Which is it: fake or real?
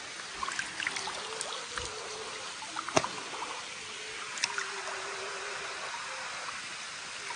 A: real